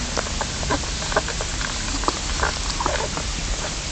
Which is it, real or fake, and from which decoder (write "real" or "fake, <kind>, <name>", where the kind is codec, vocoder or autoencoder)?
real